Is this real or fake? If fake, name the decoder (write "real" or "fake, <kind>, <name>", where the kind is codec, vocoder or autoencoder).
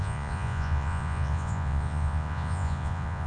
fake, vocoder, Vocos